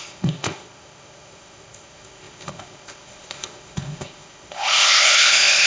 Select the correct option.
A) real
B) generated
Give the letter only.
B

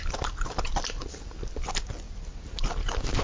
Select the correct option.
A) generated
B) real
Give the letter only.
B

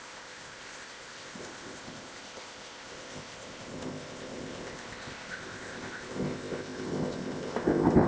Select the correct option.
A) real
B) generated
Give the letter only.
B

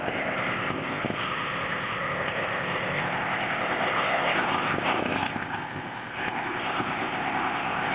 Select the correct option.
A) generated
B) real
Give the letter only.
A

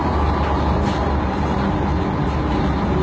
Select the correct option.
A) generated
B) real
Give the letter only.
B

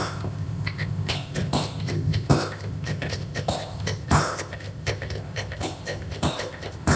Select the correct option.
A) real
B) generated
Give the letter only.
B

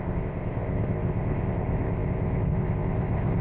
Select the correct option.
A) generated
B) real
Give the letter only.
A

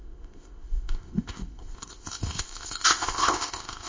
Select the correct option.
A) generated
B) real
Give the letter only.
A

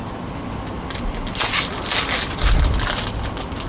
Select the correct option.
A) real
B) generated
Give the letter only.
A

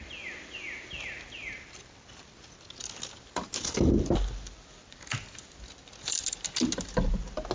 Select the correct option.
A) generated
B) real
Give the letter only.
B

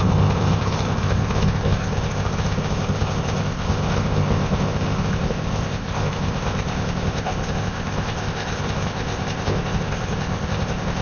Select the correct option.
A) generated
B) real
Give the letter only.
A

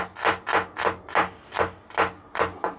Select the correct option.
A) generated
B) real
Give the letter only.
B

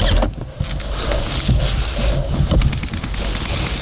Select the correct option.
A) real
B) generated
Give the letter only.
A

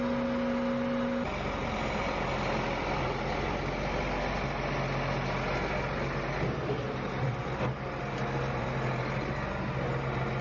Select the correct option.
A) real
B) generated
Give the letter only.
A